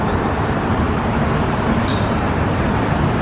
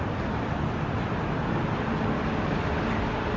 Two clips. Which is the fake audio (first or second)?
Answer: first